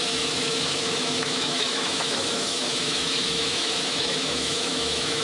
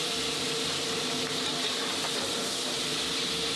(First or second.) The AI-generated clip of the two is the first